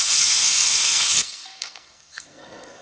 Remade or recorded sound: remade